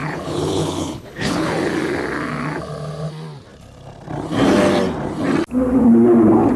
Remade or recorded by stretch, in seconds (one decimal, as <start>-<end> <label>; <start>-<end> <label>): 0.0-1.5 remade; 1.5-6.6 recorded